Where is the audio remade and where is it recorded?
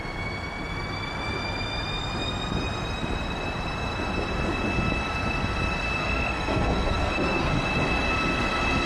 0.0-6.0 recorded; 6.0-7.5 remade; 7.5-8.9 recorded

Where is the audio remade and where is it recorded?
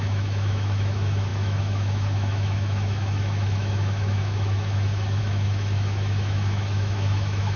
0.0-7.6 remade